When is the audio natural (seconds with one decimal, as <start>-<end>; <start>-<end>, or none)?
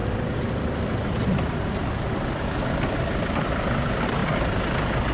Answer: 4.2-5.1